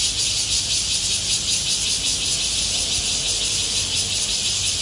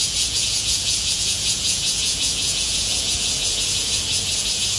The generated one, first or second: second